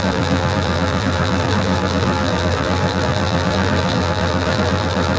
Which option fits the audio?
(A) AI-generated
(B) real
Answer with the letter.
A